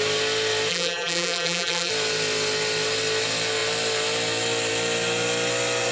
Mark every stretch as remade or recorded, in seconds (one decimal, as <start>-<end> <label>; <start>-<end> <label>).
0.0-0.7 recorded; 0.7-1.9 remade; 1.9-5.9 recorded